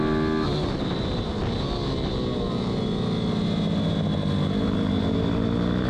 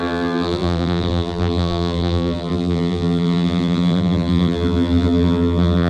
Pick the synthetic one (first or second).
second